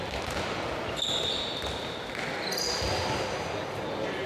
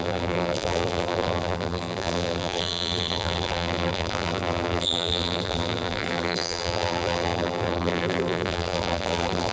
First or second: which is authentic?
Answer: first